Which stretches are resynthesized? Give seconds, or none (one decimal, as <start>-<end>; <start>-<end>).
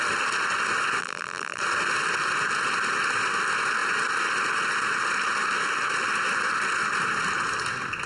1.0-1.6